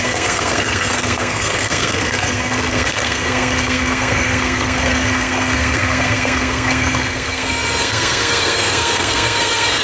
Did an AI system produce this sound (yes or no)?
yes